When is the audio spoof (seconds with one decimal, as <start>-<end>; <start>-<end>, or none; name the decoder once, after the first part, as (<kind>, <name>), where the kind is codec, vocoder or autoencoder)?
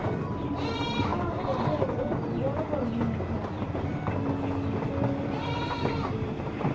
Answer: 0.0-1.1 (vocoder, BigVGAN v2); 5.1-6.7